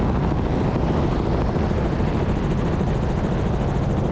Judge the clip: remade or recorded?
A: recorded